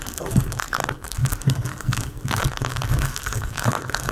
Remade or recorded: remade